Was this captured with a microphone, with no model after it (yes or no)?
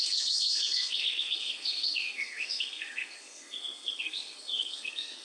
no